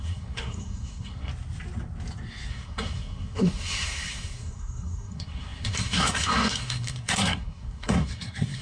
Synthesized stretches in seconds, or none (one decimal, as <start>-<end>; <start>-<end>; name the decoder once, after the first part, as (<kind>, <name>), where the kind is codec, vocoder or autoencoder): 0.0-1.3 (codec, SNAC); 2.5-8.6